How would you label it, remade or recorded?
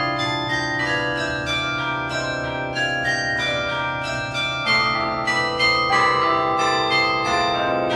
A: recorded